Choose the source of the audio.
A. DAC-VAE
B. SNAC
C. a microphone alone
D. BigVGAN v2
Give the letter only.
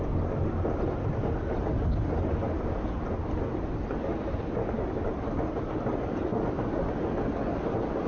C